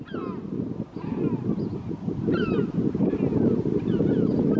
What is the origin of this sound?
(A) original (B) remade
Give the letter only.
A